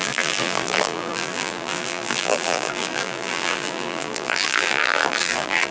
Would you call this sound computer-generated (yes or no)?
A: yes